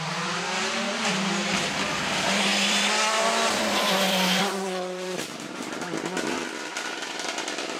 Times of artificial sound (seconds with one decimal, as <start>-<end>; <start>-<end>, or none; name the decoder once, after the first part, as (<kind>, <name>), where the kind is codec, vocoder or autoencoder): 2.5-6.3 (vocoder, BigVGAN v2)

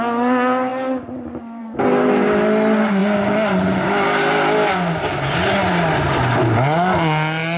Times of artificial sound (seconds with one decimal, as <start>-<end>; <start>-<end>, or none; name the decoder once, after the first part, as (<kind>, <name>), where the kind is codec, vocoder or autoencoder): none

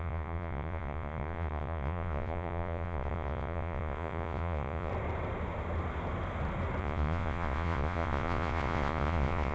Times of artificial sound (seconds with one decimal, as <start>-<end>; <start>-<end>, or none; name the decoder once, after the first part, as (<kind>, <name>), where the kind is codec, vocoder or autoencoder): 0.0-4.9 (vocoder, Vocos); 6.8-9.5

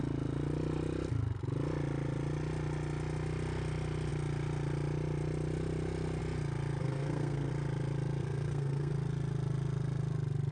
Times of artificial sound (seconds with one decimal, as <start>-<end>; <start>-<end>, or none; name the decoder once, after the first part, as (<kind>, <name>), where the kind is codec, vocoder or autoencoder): 6.8-7.5 (codec, SNAC); 8.2-8.9

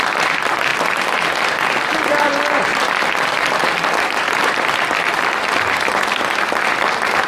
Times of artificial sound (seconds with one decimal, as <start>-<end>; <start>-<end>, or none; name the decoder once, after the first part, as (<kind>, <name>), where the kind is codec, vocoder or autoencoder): none

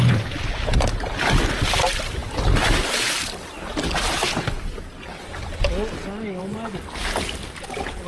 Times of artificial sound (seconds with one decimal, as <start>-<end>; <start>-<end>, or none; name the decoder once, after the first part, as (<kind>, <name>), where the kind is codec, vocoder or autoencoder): none